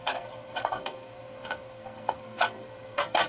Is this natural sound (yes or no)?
no